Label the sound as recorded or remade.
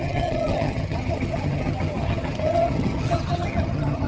remade